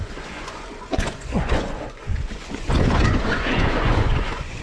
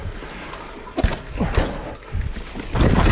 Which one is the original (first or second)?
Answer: second